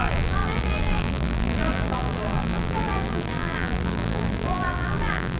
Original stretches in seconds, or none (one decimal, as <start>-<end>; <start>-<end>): none